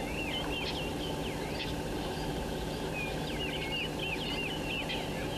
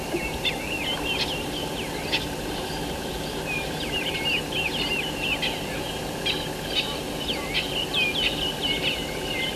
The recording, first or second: first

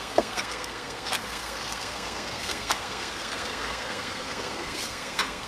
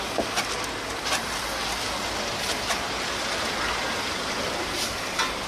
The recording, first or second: second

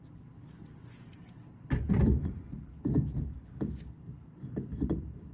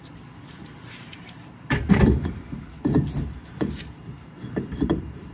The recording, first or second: first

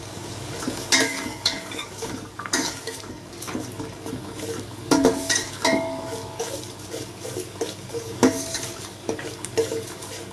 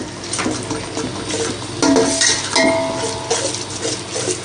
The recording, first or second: second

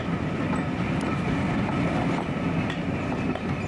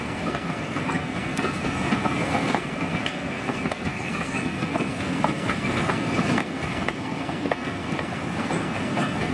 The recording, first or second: first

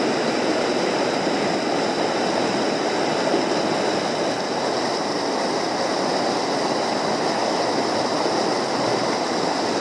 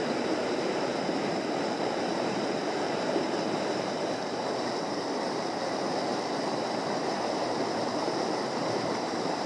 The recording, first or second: first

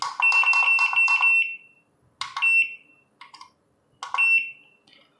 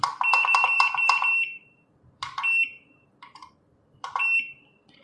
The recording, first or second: first